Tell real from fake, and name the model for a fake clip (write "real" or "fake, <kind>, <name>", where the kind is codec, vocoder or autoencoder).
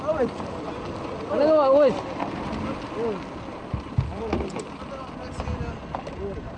real